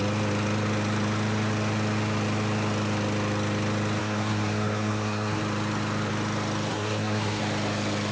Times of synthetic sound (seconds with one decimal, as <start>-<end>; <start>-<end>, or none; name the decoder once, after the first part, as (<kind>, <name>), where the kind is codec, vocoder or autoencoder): 4.0-5.4 (codec, SNAC); 6.7-7.4